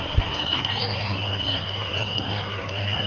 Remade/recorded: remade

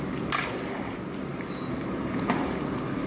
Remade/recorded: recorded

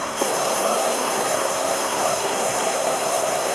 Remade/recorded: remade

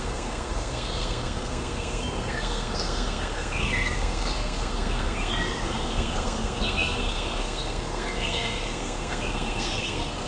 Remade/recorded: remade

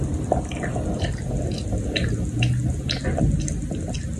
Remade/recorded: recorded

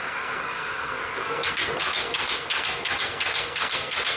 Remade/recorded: remade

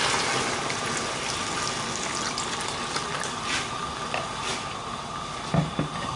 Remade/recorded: recorded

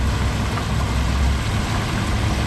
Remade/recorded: recorded